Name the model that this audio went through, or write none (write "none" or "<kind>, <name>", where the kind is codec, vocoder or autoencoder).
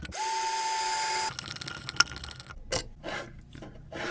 none